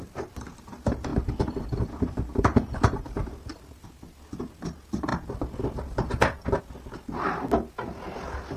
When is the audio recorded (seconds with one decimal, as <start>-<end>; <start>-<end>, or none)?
0.0-1.1; 3.3-8.6